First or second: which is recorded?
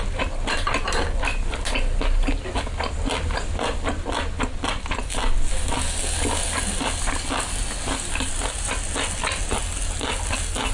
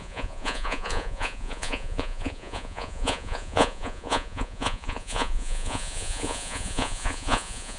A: first